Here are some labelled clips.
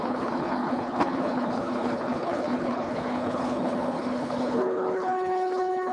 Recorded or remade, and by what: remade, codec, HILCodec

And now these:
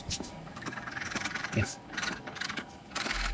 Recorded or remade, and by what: remade, codec, DAC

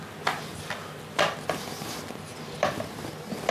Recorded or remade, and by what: recorded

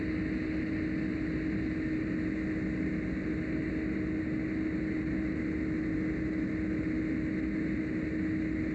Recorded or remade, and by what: recorded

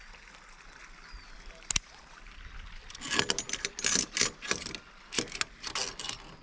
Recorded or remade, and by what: recorded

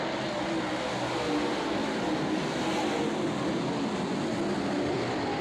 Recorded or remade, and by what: recorded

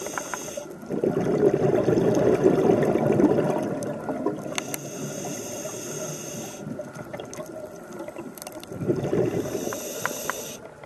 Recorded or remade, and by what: recorded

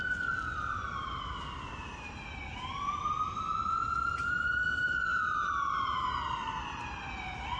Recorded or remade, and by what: recorded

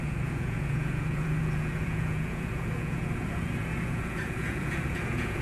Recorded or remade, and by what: remade, vocoder, Vocos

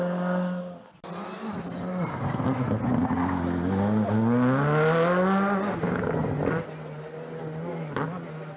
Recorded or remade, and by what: recorded